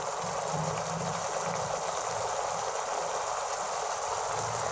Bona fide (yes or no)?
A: yes